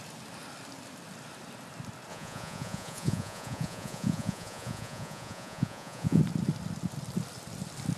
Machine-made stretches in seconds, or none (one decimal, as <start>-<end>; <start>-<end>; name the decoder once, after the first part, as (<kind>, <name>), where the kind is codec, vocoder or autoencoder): 2.1-6.2 (vocoder, Vocos)